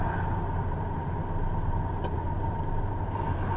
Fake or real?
real